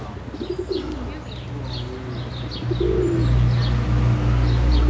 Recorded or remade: recorded